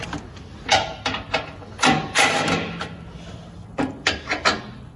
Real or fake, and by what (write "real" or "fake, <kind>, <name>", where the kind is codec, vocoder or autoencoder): real